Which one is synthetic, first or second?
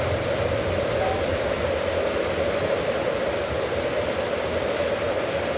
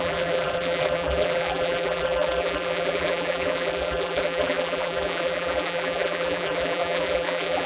second